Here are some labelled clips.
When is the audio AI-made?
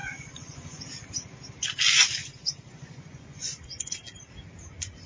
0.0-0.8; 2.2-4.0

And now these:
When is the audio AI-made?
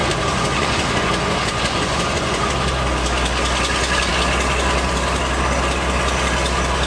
0.0-2.5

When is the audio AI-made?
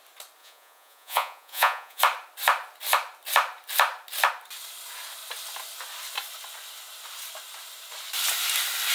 0.4-2.0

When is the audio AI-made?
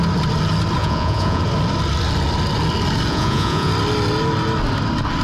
0.8-1.4; 3.1-3.7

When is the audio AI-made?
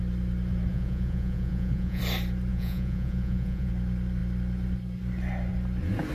0.7-2.0; 2.5-3.7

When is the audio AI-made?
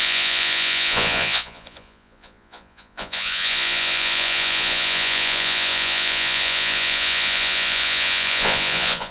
0.0-9.1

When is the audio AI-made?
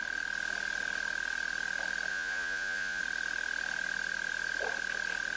2.1-3.0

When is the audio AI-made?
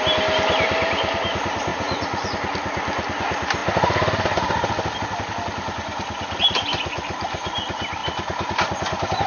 1.7-2.3